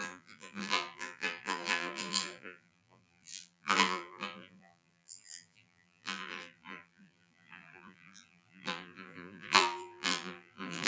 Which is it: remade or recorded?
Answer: remade